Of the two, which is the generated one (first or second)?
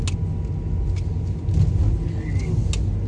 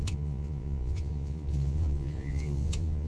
second